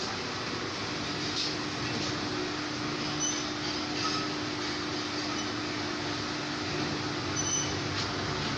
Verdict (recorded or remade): recorded